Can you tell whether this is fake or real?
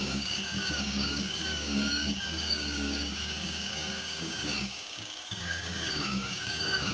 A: fake